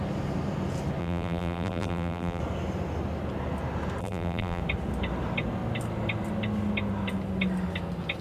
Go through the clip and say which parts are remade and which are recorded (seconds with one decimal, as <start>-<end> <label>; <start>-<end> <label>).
0.0-1.0 recorded; 1.0-2.4 remade; 2.4-4.0 recorded; 4.0-4.6 remade; 4.6-8.2 recorded